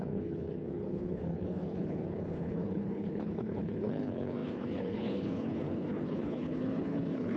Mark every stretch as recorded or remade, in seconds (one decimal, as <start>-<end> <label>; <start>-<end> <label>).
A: 0.0-7.4 remade